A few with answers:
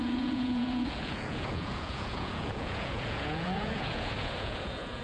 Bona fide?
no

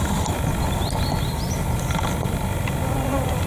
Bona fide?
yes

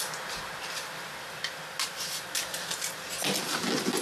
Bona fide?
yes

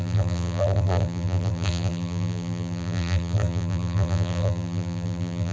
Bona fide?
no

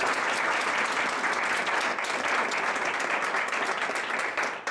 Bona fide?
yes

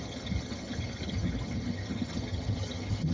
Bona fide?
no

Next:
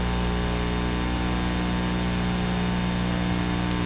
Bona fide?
yes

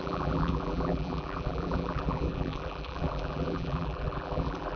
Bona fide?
no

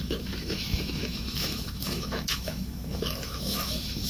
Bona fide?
no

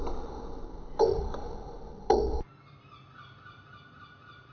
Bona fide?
yes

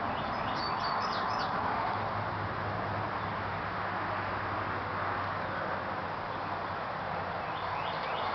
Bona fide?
yes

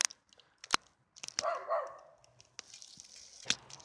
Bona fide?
yes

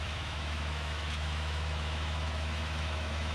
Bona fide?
no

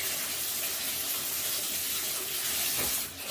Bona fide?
no